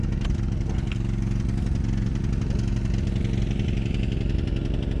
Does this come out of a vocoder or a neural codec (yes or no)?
no